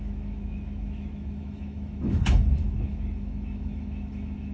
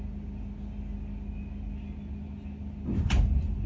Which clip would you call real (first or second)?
second